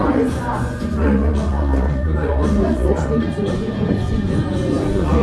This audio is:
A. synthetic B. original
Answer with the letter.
A